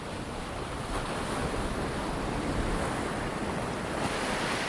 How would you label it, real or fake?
real